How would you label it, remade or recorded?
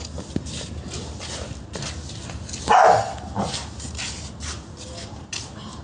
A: recorded